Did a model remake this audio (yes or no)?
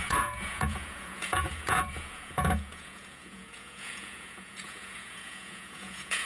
yes